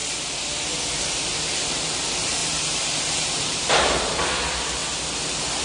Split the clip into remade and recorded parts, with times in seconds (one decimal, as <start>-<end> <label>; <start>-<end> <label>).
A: 0.0-2.4 recorded; 2.4-4.3 remade; 4.3-5.6 recorded